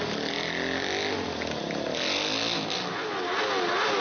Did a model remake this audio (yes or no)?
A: no